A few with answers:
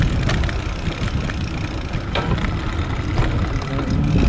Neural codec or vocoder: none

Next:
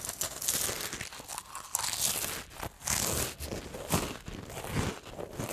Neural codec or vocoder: none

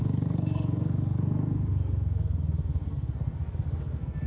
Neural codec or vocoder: codec, SNAC